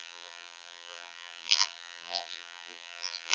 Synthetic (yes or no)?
yes